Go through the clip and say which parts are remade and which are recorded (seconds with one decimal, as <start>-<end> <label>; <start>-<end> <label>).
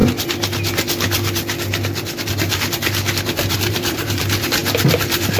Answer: 0.0-3.2 recorded; 3.2-4.6 remade; 4.6-5.4 recorded